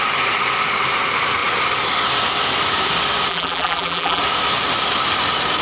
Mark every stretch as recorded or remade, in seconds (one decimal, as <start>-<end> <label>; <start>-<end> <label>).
0.0-3.3 recorded; 3.3-4.2 remade; 4.2-5.6 recorded